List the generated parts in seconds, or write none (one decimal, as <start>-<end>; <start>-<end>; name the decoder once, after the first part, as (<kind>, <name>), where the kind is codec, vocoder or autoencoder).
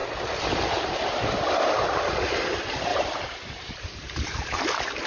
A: 2.9-4.6 (vocoder, BigVGAN v2)